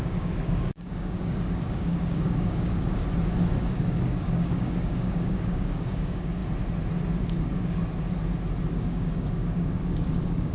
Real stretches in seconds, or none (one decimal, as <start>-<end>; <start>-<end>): 3.0-3.6; 6.4-7.3; 7.8-8.7